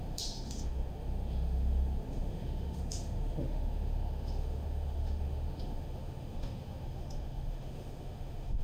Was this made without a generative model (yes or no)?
no